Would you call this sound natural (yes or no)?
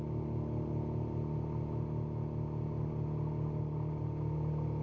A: yes